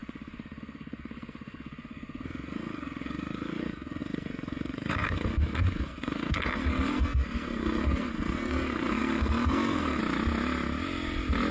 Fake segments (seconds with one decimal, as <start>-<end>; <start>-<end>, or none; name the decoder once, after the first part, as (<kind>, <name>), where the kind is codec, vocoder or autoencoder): 0.0-10.0 (codec, SNAC)